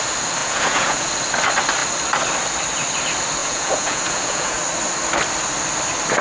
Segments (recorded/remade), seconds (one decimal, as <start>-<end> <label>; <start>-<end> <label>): 0.0-0.4 recorded; 0.4-1.1 remade; 1.1-3.4 recorded; 3.4-4.6 remade; 4.6-6.2 recorded